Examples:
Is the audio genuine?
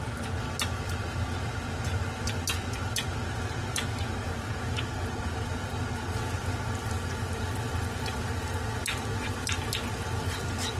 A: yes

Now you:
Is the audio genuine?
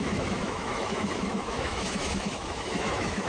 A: no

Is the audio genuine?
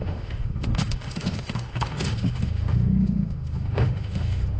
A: no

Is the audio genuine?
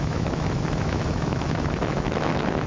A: no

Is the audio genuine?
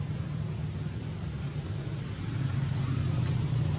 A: yes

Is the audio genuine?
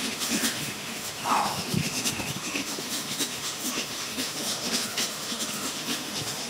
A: no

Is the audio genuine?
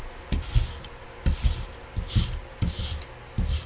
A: yes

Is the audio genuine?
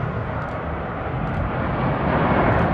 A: yes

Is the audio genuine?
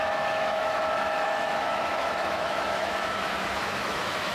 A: no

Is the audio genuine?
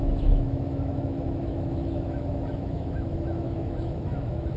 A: no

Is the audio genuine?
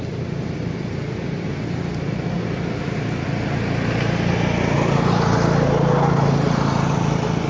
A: yes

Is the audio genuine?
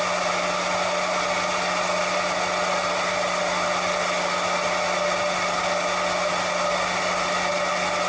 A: yes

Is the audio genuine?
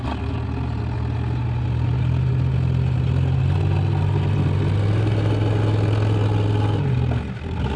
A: yes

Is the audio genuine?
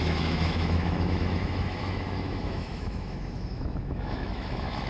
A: no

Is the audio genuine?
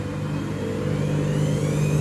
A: yes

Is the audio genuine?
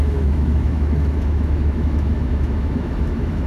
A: no